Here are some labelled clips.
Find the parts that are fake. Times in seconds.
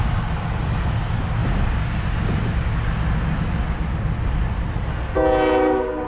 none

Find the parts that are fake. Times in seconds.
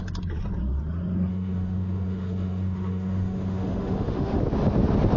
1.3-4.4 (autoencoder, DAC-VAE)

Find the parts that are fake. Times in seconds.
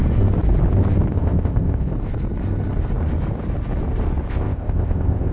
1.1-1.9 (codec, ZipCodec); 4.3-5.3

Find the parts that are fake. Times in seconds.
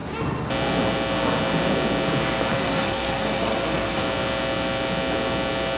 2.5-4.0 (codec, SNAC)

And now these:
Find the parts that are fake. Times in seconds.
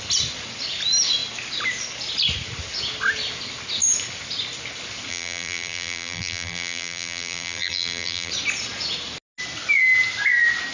5.1-8.3 (vocoder, BigVGAN v2)